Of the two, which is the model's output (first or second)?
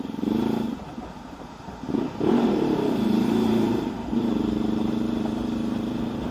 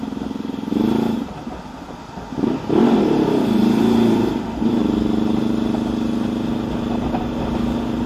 first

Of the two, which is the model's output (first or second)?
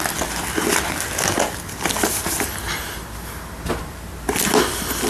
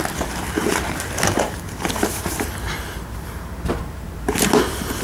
second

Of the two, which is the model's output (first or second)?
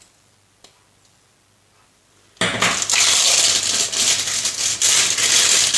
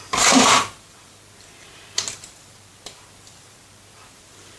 second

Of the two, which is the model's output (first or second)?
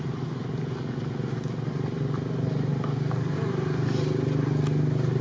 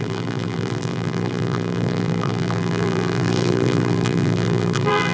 second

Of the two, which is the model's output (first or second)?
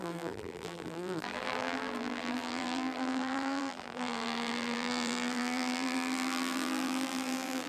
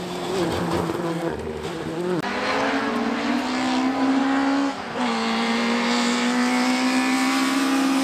first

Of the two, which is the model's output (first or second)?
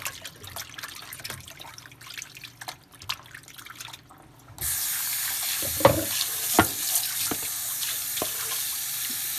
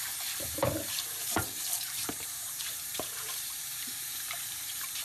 second